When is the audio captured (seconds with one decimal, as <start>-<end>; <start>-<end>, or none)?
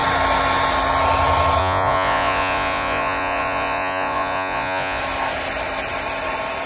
0.0-1.6; 5.0-6.7